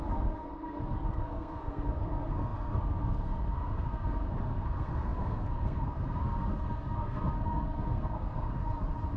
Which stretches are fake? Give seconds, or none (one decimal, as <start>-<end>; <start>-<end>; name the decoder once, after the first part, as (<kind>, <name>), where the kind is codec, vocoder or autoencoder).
0.0-8.6 (codec, SNAC)

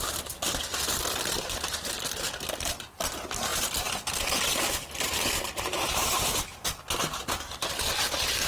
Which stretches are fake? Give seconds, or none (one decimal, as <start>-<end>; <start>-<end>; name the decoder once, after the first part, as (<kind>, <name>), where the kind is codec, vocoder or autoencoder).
none

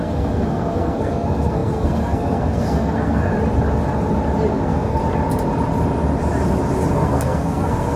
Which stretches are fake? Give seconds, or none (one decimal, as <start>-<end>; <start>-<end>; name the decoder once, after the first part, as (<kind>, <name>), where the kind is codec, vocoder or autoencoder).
0.0-3.3 (codec, SNAC); 4.5-5.0; 6.9-8.0

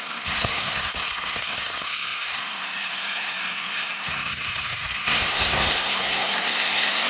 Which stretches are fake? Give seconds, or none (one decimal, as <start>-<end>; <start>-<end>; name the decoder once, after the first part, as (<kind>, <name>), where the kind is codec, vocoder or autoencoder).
0.0-7.1 (codec, SNAC)

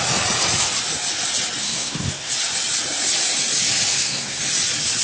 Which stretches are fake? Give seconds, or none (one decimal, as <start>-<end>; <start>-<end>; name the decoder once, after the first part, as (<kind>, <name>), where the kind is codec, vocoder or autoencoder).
1.6-2.3 (codec, SNAC); 3.9-4.4